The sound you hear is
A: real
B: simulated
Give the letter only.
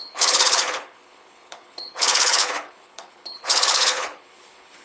B